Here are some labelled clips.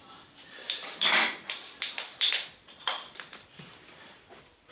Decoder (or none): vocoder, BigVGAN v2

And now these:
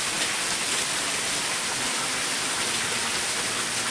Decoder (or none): none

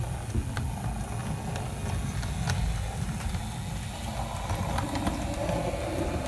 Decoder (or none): none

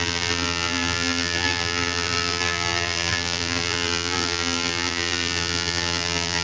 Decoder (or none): vocoder, BigVGAN v2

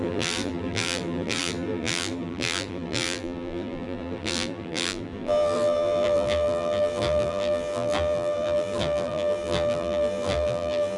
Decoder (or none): vocoder, BigVGAN v2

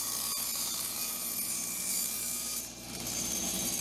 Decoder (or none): vocoder, BigVGAN v2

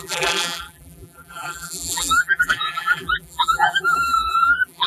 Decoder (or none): vocoder, BigVGAN v2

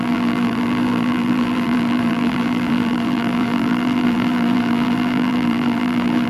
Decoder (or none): vocoder, BigVGAN v2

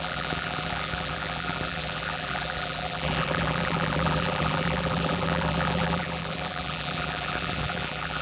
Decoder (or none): vocoder, BigVGAN v2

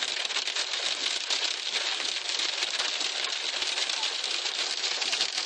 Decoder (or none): none